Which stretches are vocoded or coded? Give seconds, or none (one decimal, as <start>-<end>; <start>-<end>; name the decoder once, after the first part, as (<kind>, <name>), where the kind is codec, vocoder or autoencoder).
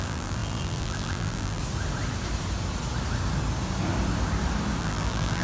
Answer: 0.0-1.6 (vocoder, BigVGAN v2); 4.8-5.4